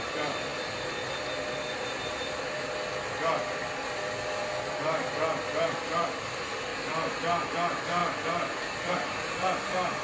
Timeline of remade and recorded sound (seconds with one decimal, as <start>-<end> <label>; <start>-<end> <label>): 0.0-0.5 remade; 0.5-5.4 recorded; 5.4-6.7 remade; 6.7-7.5 recorded; 7.5-8.0 remade; 8.0-8.9 recorded; 8.9-10.0 remade